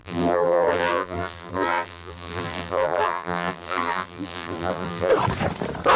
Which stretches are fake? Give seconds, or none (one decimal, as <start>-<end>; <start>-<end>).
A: 0.0-5.1